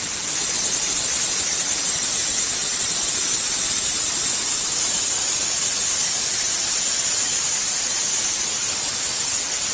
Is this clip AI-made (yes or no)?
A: no